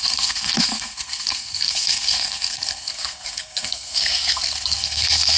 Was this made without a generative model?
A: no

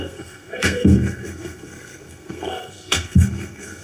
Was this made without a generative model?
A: no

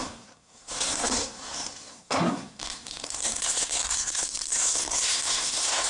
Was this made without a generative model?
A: no